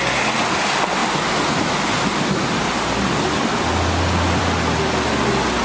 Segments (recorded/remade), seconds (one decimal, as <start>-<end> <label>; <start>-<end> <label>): 0.0-5.6 recorded